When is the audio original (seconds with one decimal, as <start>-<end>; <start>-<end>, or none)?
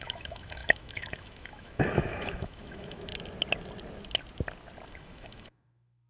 3.1-4.9